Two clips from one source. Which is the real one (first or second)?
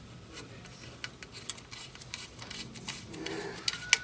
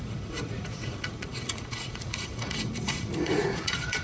first